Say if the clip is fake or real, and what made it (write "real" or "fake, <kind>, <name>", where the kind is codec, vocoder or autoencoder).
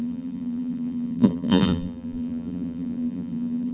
fake, vocoder, BigVGAN v2